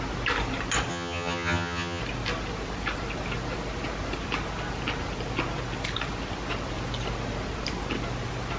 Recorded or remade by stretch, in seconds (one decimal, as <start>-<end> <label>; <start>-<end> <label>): 0.0-0.9 recorded; 0.9-2.0 remade; 2.0-8.6 recorded